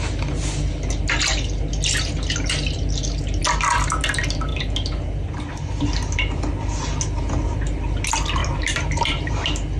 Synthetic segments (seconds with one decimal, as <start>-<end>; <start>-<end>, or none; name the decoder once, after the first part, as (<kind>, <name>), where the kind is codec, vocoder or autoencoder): 8.4-9.3 (vocoder, BigVGAN v2)